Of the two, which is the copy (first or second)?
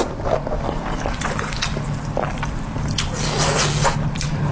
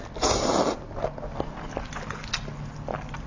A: first